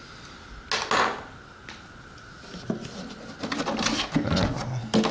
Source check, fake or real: real